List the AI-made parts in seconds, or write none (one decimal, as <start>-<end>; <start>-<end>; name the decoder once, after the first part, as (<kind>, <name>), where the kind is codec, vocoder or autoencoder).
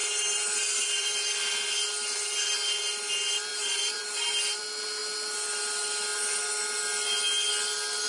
0.0-1.3 (vocoder, BigVGAN v2); 3.5-4.6